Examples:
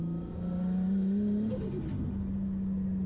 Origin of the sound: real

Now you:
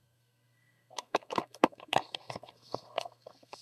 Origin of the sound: fake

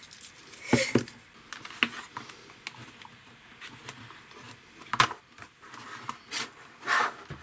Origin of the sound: real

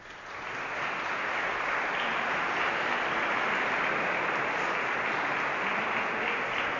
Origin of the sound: real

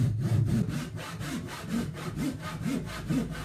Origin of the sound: real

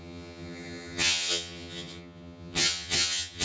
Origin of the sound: fake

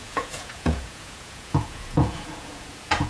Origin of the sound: fake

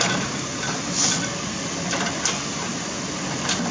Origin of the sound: real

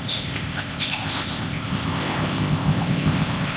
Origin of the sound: fake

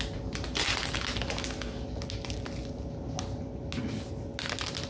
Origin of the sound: real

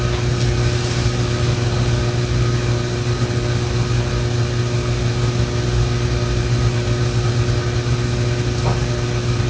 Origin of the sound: real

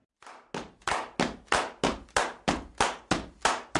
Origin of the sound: real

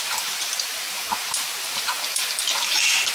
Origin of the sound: fake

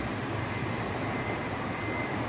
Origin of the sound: real